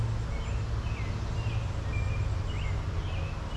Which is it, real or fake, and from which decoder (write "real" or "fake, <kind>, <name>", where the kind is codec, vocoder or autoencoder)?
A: real